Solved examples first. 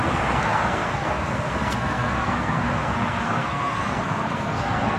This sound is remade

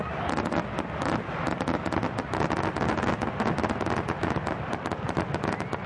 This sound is recorded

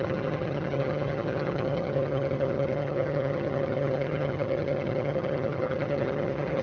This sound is remade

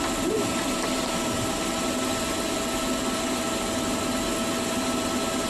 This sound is recorded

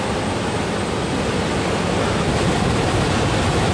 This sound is recorded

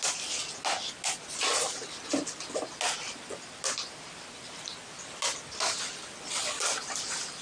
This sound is recorded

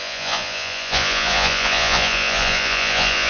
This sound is remade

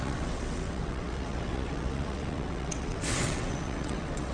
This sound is remade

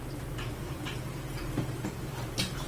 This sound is remade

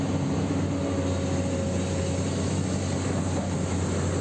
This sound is recorded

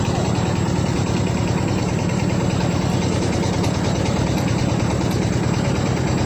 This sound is remade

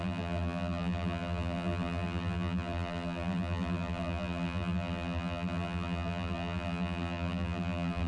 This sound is remade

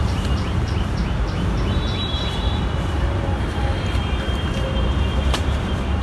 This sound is remade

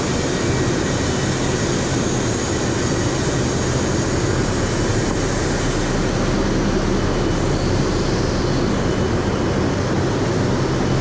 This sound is recorded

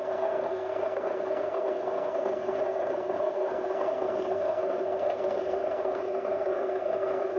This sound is remade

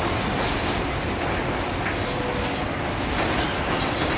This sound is recorded